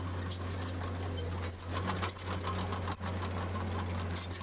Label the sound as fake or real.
real